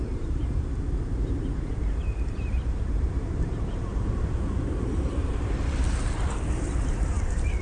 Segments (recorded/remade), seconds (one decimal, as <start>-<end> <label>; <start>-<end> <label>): 0.0-7.6 remade

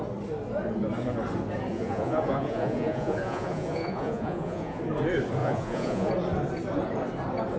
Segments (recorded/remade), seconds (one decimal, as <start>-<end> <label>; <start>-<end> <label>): 0.0-1.7 recorded; 1.7-4.8 remade; 4.8-5.4 recorded; 5.4-6.1 remade; 6.1-7.6 recorded

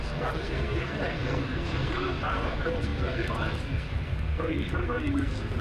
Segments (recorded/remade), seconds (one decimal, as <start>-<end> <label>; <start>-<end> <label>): 0.0-5.6 remade

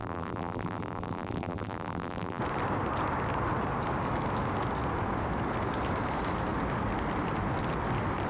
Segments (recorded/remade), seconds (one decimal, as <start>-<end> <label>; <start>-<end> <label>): 0.0-2.4 remade; 2.4-8.3 recorded

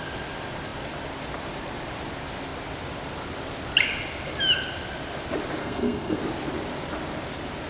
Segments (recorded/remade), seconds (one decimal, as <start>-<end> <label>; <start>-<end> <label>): 0.0-5.6 recorded; 5.6-6.2 remade; 6.2-7.7 recorded